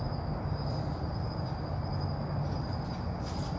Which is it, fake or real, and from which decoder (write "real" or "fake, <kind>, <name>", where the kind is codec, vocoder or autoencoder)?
real